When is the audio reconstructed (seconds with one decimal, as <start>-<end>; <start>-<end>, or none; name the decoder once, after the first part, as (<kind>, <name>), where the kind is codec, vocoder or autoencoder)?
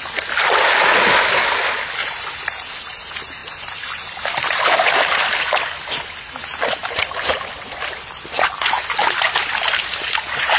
3.4-5.9 (vocoder, BigVGAN v2); 6.8-10.2